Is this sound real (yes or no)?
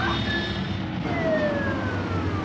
yes